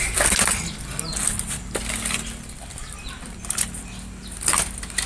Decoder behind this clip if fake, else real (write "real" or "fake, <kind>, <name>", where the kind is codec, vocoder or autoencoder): real